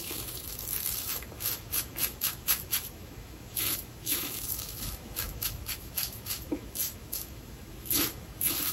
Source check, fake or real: fake